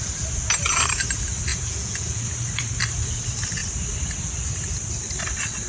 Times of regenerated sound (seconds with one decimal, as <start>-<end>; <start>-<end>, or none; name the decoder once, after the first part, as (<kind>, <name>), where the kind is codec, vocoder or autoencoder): 1.5-2.2 (vocoder, Vocos)